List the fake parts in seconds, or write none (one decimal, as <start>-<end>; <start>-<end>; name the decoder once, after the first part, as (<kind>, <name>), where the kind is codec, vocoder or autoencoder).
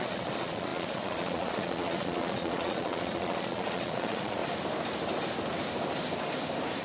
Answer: 0.0-4.4 (vocoder, Vocos)